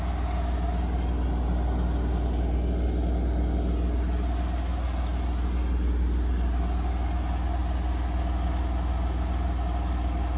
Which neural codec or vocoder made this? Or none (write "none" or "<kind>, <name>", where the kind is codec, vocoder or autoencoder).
none